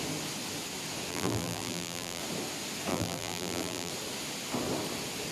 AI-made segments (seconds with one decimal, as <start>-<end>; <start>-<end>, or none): 1.1-2.2; 2.9-3.9